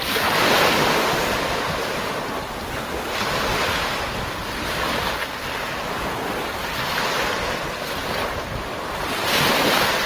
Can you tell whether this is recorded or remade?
recorded